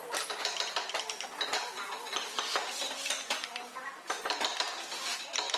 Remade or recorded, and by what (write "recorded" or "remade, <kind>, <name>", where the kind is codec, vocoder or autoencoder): recorded